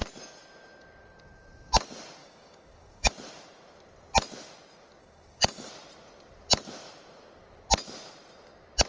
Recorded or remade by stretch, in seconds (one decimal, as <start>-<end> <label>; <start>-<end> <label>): 0.0-2.2 recorded; 2.2-3.1 remade; 3.1-5.0 recorded; 5.0-5.7 remade; 5.7-8.9 recorded